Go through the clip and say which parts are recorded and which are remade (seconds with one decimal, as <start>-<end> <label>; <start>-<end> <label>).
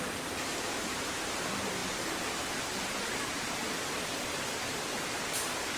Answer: 0.0-0.5 recorded; 0.5-1.4 remade; 1.4-1.8 recorded; 1.8-4.4 remade; 4.4-5.8 recorded